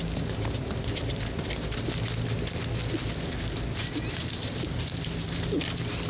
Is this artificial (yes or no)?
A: no